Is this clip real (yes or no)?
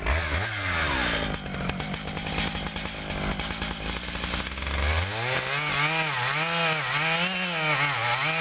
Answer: yes